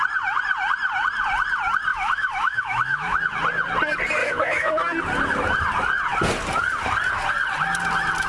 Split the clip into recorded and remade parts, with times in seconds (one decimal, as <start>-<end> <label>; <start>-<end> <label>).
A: 0.0-1.9 recorded; 1.9-3.2 remade; 3.2-4.2 recorded; 4.2-4.8 remade; 4.8-8.3 recorded